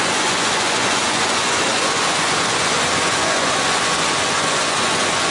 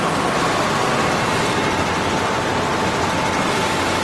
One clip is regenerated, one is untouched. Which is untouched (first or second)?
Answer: second